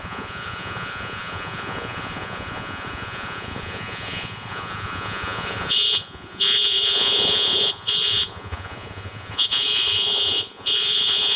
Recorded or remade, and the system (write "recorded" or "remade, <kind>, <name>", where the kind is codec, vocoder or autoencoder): remade, vocoder, Vocos